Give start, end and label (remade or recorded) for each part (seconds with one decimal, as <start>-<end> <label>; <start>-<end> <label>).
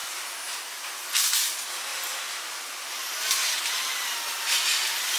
0.0-0.8 remade; 0.8-1.9 recorded; 1.9-2.7 remade; 2.7-5.2 recorded